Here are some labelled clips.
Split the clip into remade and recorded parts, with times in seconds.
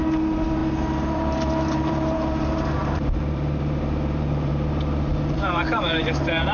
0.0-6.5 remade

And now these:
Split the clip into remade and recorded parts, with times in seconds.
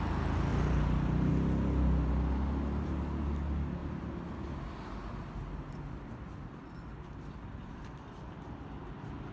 0.0-0.5 recorded; 0.5-1.3 remade; 1.3-9.3 recorded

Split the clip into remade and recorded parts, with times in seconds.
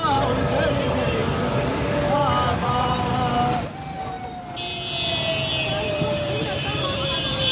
0.0-1.2 remade; 1.2-5.7 recorded; 5.7-7.5 remade